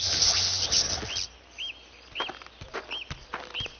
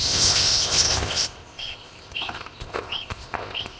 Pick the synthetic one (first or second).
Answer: second